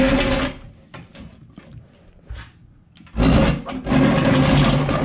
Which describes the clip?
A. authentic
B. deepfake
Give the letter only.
A